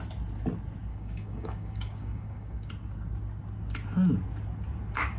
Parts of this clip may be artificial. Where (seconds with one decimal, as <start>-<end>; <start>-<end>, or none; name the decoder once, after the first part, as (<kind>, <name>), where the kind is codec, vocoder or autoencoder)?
0.9-2.7 (codec, DAC)